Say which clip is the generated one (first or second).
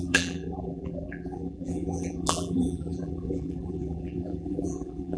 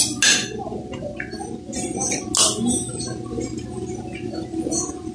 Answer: first